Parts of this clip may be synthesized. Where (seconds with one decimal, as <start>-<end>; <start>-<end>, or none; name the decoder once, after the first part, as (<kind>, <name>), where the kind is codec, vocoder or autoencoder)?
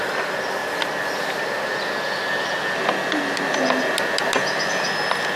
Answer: none